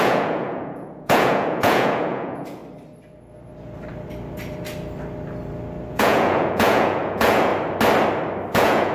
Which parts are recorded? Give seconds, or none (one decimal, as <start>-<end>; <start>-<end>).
2.6-5.9; 7.5-8.5